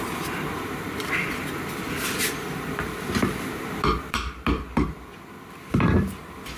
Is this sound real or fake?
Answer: fake